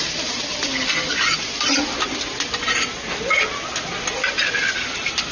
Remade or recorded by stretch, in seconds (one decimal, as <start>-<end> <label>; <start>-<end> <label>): 0.0-1.8 remade; 1.8-5.3 recorded